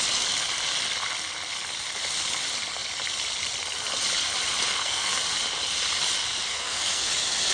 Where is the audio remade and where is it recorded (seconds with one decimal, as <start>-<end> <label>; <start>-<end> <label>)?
0.0-4.7 recorded; 4.7-5.2 remade; 5.2-6.5 recorded; 6.5-7.1 remade; 7.1-7.5 recorded